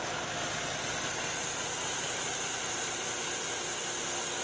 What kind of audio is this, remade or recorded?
recorded